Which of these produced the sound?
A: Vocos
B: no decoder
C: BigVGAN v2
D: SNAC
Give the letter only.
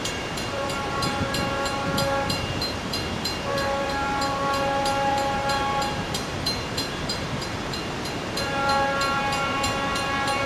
C